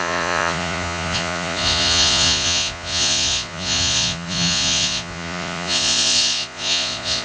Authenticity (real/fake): fake